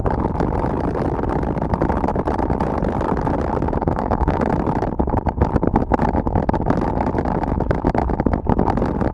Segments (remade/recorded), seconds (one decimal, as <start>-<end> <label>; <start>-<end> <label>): 0.0-3.8 recorded; 3.8-4.5 remade; 4.5-9.1 recorded